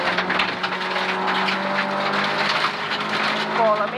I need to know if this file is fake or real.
real